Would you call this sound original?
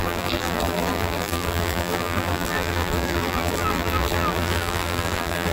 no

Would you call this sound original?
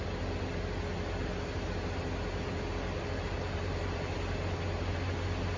yes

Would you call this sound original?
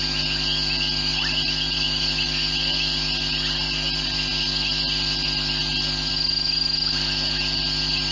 yes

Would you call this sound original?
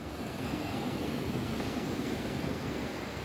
no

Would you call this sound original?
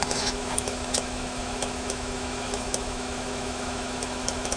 no